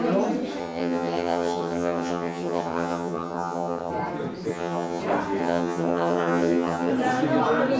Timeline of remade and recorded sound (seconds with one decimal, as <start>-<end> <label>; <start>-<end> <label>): 0.0-0.6 recorded; 0.6-3.9 remade; 3.9-4.5 recorded; 4.5-5.0 remade; 5.0-5.4 recorded; 5.4-6.9 remade; 6.9-7.8 recorded